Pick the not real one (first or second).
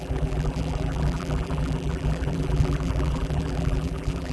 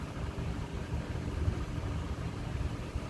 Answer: first